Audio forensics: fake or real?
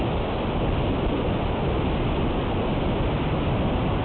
real